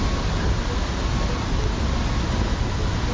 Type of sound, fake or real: real